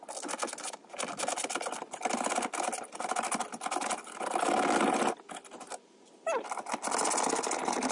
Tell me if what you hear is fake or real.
real